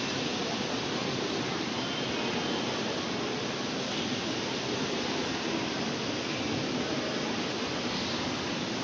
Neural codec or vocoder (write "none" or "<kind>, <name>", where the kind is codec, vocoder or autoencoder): none